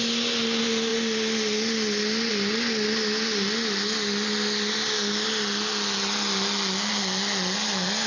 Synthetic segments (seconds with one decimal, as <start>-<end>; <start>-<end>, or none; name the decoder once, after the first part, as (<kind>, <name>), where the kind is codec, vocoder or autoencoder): none